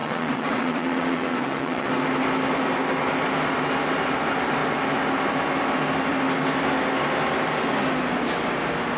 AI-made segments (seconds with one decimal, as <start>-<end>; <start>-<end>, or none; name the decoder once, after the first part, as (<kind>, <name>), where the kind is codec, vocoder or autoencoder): 0.0-1.9 (vocoder, WaveNeXt)